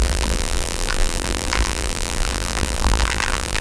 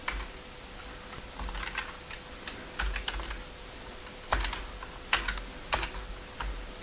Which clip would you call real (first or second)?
second